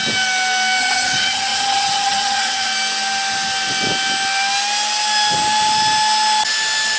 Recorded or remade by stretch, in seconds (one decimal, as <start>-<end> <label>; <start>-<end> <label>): 0.0-0.8 recorded; 0.8-2.7 remade; 2.7-7.0 recorded